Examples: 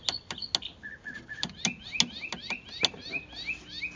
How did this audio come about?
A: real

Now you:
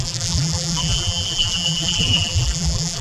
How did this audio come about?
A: fake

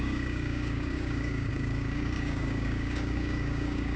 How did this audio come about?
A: fake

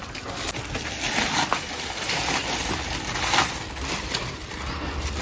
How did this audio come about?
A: real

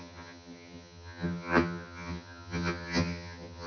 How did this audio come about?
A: fake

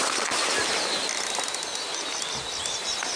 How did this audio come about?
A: real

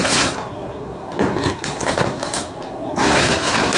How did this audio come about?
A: fake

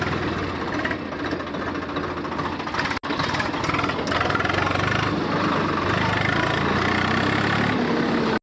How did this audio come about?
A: real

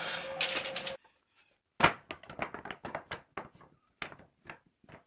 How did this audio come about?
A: real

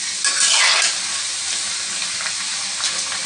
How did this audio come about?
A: real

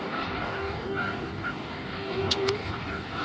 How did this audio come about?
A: fake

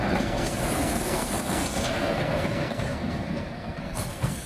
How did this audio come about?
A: fake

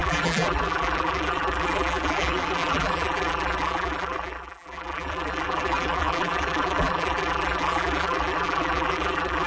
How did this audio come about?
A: fake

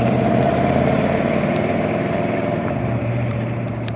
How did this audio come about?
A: fake